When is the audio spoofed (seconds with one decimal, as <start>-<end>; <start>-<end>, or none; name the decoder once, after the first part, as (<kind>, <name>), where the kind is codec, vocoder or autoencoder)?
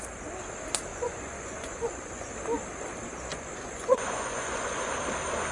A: 0.9-2.3 (vocoder, Vocos); 3.3-5.0